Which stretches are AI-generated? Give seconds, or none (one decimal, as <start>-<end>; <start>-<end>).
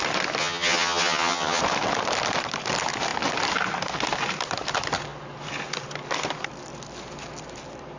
0.4-1.6